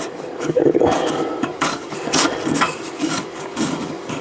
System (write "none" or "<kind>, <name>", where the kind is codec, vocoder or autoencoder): codec, DAC